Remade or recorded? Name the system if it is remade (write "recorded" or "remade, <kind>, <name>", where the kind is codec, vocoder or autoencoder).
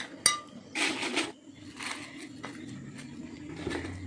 recorded